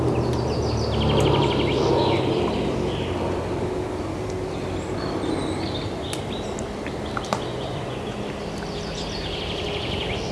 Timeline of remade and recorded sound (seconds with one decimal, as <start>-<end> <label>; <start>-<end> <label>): 0.0-7.5 recorded; 7.5-8.2 remade; 8.2-10.3 recorded